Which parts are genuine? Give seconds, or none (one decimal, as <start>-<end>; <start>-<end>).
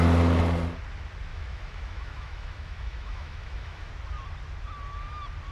0.0-1.3; 3.9-5.5